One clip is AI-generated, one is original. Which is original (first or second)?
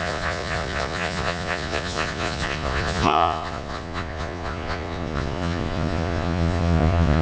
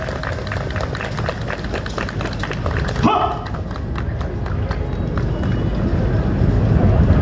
second